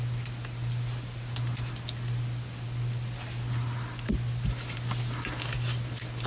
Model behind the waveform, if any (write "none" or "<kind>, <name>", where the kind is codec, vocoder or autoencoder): none